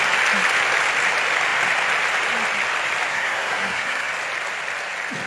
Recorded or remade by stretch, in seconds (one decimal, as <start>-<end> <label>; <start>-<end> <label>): 0.0-3.1 recorded; 3.1-4.1 remade; 4.1-5.3 recorded